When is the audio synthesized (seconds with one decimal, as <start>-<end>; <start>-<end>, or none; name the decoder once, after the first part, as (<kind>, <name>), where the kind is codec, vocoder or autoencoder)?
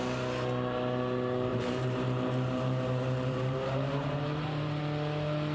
1.5-4.8 (vocoder, BigVGAN v2)